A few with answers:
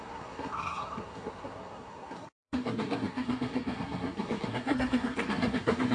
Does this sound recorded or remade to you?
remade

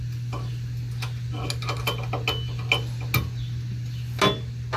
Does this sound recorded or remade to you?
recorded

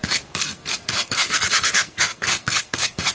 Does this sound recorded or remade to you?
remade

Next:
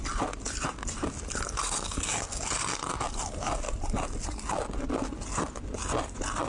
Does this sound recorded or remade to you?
recorded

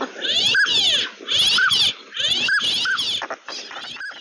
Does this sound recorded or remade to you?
recorded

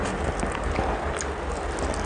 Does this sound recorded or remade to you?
recorded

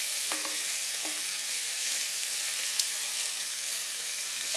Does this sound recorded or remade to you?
remade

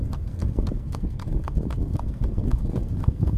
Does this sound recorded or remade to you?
remade